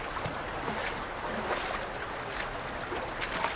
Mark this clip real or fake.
real